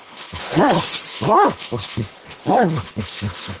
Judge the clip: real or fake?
fake